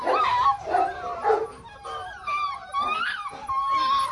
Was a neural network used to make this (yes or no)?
no